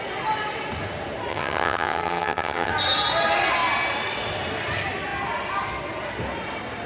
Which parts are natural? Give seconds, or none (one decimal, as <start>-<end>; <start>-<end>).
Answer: 0.0-1.3; 2.7-6.9